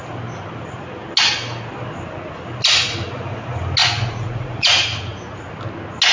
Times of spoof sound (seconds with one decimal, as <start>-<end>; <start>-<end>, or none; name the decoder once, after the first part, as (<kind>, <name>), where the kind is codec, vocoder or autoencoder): 3.8-5.5 (vocoder, Vocos)